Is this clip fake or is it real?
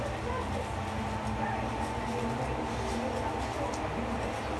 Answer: real